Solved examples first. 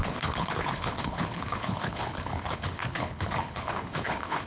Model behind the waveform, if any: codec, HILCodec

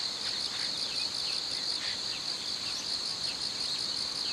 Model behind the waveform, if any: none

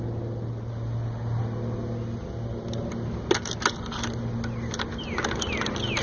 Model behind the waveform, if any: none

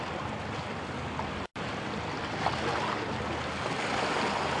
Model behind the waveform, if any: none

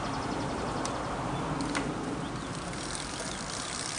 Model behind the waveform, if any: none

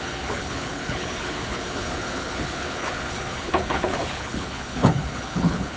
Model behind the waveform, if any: codec, HILCodec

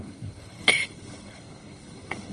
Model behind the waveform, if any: codec, HILCodec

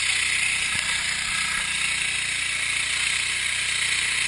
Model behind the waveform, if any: none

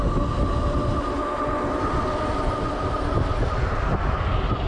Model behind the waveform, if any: none